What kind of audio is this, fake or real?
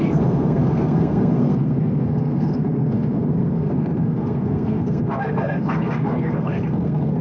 fake